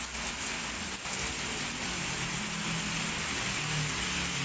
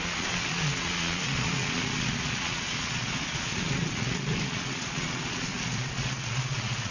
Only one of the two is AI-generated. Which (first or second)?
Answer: second